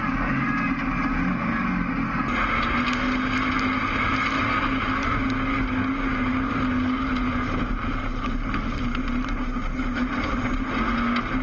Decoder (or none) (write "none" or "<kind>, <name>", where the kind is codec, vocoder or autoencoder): none